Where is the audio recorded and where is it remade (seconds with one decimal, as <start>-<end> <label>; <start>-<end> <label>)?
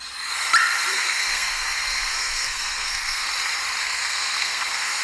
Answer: 0.0-0.9 recorded; 0.9-3.3 remade; 3.3-3.8 recorded; 3.8-5.0 remade